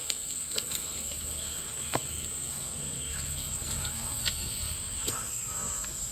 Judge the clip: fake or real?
fake